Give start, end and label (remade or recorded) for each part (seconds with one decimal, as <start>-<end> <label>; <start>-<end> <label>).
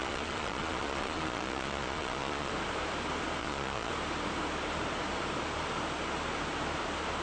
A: 0.0-2.5 remade; 2.5-3.4 recorded; 3.4-3.9 remade; 3.9-7.2 recorded